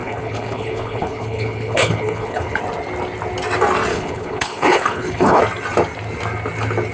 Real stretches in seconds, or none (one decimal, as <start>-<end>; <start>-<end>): 2.6-3.9; 5.4-6.9